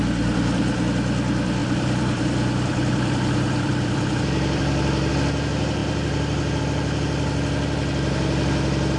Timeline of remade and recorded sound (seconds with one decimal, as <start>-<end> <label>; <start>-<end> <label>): 0.0-1.6 recorded; 1.6-5.1 remade; 5.1-5.8 recorded; 5.8-6.6 remade; 6.6-9.0 recorded